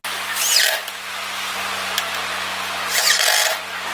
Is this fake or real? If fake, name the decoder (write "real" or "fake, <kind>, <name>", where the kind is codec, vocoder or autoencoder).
real